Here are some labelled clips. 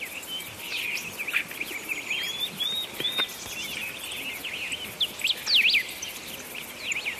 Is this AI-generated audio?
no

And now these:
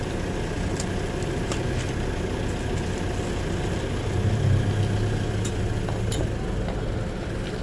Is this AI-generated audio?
no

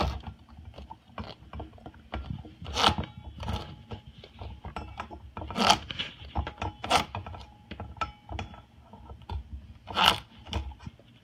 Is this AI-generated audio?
no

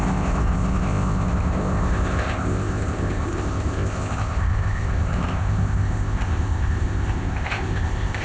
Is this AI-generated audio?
yes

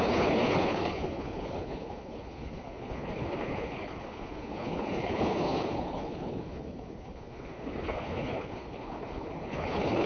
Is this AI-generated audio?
yes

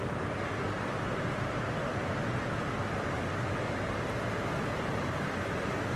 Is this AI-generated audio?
no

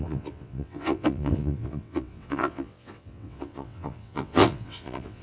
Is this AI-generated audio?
yes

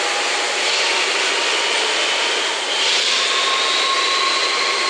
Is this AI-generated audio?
no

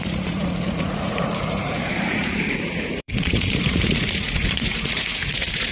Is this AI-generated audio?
yes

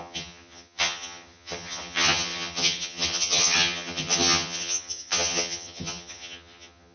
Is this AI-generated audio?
yes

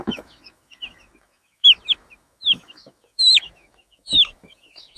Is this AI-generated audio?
yes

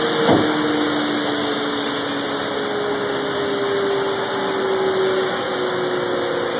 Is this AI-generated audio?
no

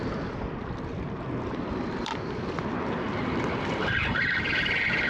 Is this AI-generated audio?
no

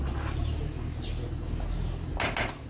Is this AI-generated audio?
no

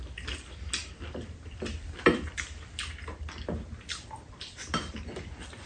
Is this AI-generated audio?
no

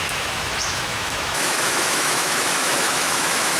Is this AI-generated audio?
yes